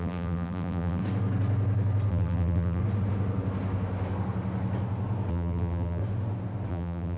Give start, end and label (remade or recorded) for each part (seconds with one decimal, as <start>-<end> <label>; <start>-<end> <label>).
0.0-1.0 remade; 1.0-2.1 recorded; 2.1-2.8 remade; 2.8-5.3 recorded; 5.3-6.0 remade; 6.0-6.7 recorded; 6.7-7.2 remade